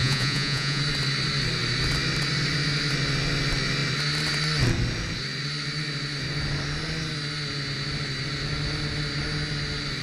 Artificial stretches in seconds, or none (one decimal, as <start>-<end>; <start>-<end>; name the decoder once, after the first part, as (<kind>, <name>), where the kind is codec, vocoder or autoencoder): 0.0-0.8 (vocoder, Vocos)